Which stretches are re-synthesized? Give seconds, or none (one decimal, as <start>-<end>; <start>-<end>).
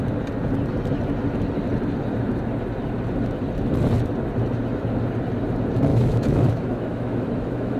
5.9-7.8